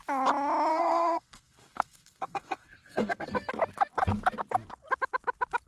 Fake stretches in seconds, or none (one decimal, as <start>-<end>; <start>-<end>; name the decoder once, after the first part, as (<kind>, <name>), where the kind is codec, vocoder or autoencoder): 0.7-3.5 (codec, SNAC)